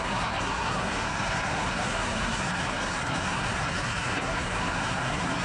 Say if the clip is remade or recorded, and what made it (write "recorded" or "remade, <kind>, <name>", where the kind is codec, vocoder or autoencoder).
remade, codec, SNAC